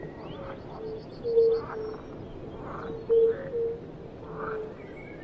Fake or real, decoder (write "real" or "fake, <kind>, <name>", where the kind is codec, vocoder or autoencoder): real